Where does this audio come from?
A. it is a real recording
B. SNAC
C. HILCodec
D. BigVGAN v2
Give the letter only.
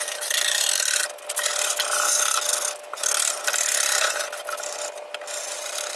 A